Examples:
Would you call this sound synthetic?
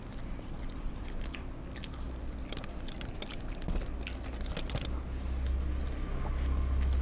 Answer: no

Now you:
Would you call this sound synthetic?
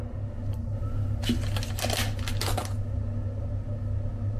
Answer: no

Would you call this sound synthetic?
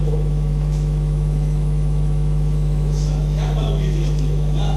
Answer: yes